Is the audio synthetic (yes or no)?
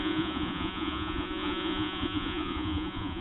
yes